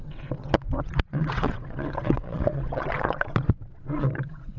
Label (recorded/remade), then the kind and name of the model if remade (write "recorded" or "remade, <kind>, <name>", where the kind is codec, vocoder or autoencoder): remade, vocoder, WaveNeXt